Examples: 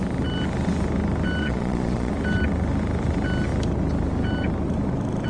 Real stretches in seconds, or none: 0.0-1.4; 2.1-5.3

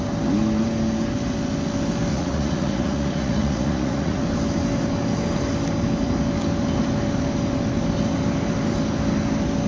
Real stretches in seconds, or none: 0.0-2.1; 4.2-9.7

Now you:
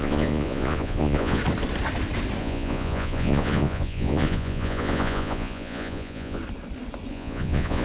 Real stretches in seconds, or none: 1.4-2.4; 6.4-7.1